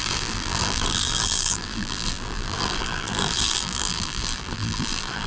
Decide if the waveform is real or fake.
fake